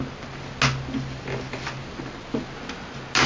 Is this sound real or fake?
real